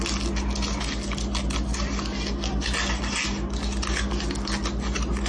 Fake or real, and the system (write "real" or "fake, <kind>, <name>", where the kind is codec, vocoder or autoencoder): real